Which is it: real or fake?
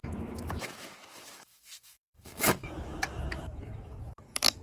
fake